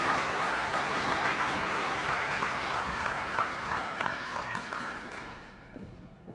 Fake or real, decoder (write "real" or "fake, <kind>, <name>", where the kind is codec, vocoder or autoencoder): fake, codec, SNAC